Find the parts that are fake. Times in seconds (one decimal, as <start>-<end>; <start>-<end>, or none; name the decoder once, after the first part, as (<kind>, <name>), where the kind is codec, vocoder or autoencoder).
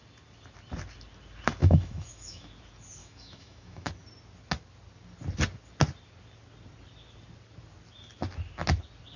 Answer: 1.6-2.5 (autoencoder, DAC-VAE); 3.0-3.9